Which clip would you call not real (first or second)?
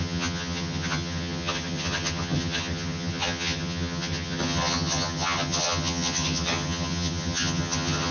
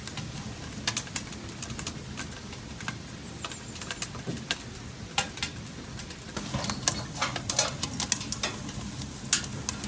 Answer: first